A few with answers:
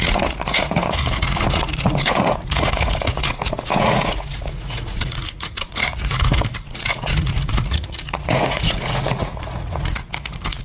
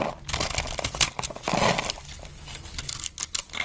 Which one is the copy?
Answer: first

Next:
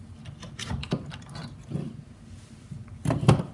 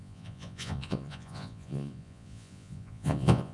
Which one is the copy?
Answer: second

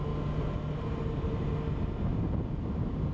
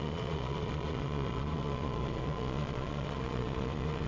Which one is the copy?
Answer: second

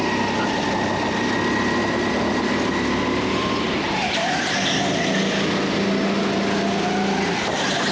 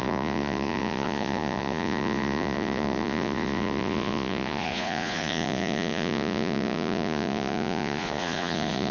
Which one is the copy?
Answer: second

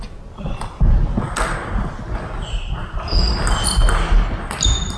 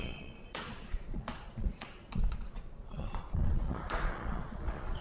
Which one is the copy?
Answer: second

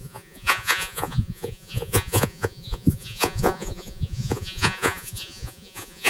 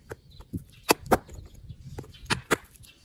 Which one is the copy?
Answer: first